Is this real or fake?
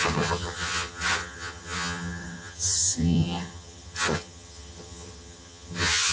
fake